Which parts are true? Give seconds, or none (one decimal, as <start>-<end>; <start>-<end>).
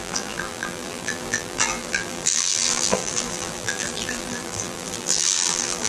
none